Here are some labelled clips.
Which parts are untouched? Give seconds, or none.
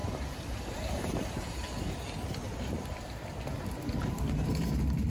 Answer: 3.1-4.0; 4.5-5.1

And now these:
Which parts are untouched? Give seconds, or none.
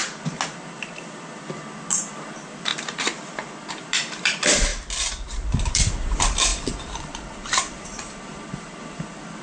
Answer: 0.0-2.1; 2.7-3.7